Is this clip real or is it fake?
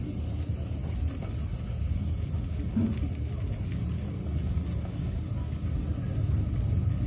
real